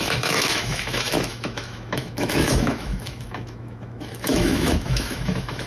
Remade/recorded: remade